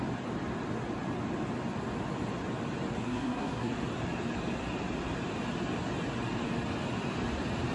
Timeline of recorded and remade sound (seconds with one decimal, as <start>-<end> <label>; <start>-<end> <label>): 0.0-3.0 recorded; 3.0-3.7 remade; 3.7-7.7 recorded

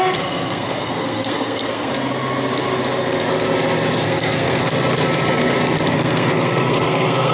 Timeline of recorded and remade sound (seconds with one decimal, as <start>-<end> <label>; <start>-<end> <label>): 0.0-1.9 remade; 1.9-4.0 recorded; 4.0-4.6 remade; 4.6-5.9 recorded; 5.9-7.3 remade

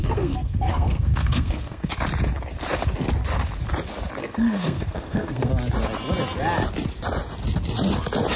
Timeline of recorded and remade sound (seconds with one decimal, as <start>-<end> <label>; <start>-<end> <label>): 0.0-1.9 remade; 1.9-4.2 recorded; 4.2-5.5 remade; 5.5-8.4 recorded

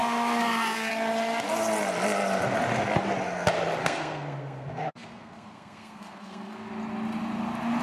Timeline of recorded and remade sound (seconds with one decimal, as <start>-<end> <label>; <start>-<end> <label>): 0.0-0.9 remade; 0.9-3.8 recorded; 3.8-6.7 remade; 6.7-7.8 recorded